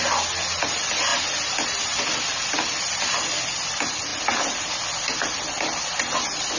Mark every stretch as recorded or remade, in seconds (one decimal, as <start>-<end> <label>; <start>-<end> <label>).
0.0-6.6 recorded

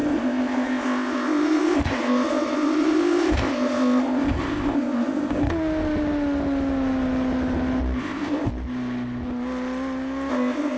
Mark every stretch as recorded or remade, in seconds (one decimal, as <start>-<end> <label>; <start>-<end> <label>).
0.0-5.5 remade; 5.5-8.0 recorded; 8.0-8.5 remade; 8.5-10.3 recorded; 10.3-10.8 remade

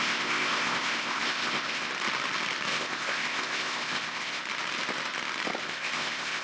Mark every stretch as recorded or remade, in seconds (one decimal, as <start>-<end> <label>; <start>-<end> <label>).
0.0-1.9 remade; 1.9-2.7 recorded; 2.7-4.4 remade; 4.4-5.6 recorded; 5.6-6.4 remade

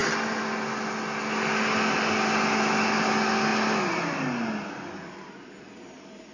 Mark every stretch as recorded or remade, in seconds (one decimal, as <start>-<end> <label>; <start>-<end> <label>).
0.0-6.3 recorded

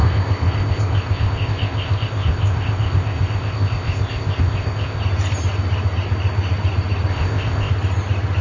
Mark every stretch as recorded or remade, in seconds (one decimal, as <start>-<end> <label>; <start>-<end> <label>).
0.0-5.0 remade; 5.0-7.1 recorded; 7.1-7.7 remade; 7.7-8.4 recorded